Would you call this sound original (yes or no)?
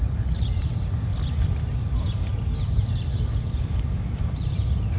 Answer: no